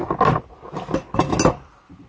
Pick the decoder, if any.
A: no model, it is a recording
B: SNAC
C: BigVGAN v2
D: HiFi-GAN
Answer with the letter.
A